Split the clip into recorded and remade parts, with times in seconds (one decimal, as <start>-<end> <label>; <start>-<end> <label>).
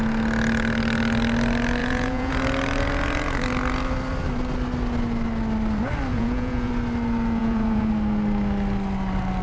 0.0-1.8 recorded; 1.8-2.3 remade; 2.3-6.1 recorded; 6.1-6.7 remade; 6.7-7.4 recorded; 7.4-7.9 remade; 7.9-9.4 recorded